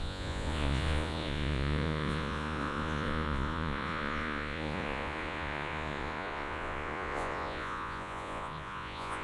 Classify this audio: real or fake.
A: fake